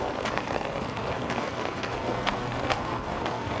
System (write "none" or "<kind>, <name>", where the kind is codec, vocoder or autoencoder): codec, SNAC